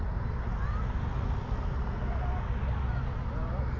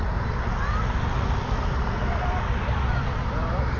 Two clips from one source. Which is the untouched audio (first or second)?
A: first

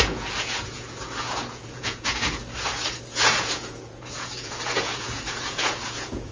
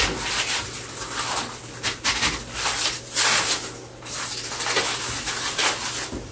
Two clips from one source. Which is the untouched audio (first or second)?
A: second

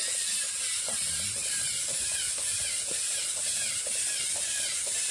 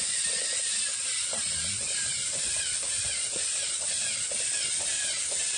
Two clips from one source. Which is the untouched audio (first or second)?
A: first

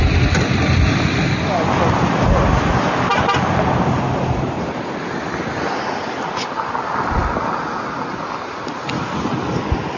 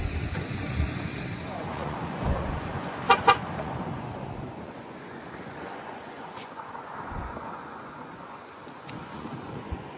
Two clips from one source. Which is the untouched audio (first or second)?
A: first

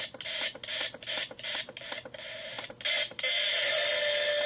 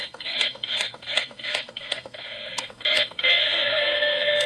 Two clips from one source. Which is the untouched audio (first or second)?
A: first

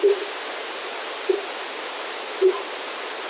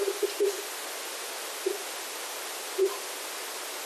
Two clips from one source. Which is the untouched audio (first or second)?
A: second